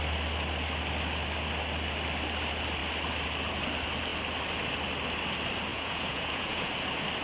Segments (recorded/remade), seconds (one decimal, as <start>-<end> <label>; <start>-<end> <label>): 0.0-5.7 recorded; 5.7-6.7 remade; 6.7-7.2 recorded